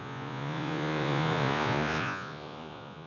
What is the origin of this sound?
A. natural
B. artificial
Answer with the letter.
B